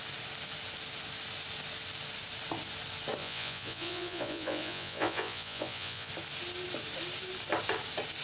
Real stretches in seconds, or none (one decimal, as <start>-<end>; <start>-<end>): 0.0-3.2; 6.1-8.2